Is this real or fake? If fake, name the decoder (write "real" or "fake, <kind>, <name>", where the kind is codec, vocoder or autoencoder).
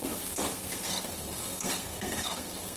fake, codec, SNAC